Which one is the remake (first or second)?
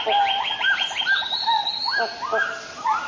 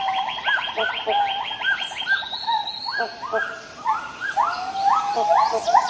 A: second